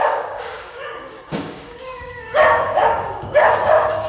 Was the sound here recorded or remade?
remade